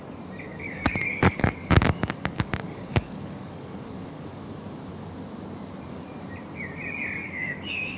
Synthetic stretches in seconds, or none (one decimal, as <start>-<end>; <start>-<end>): 0.5-4.6; 7.2-8.0